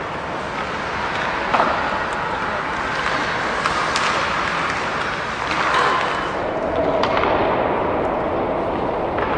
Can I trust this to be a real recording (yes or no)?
yes